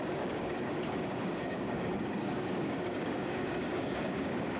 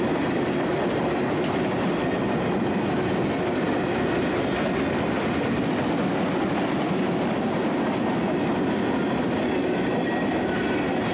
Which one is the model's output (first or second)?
first